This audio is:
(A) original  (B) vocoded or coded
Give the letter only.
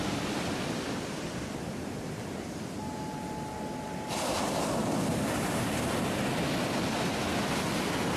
A